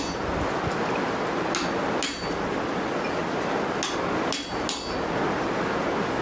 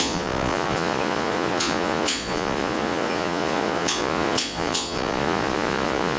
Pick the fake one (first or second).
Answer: second